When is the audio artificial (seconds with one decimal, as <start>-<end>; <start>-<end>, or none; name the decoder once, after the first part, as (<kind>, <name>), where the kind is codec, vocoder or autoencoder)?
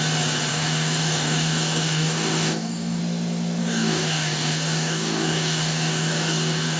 0.5-3.0 (codec, DAC); 3.6-6.8